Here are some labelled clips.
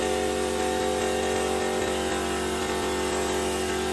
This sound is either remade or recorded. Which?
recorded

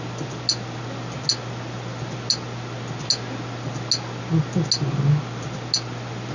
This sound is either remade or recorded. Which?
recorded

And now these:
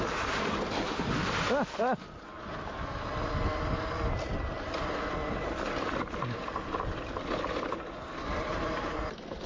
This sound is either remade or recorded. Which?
recorded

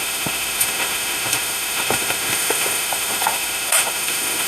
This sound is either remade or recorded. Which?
remade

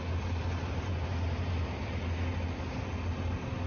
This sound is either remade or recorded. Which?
recorded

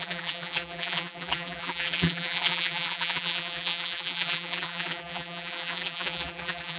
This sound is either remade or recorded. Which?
remade